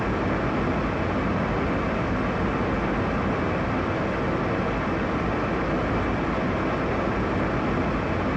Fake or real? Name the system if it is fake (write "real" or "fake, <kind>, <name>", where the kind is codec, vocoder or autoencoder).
real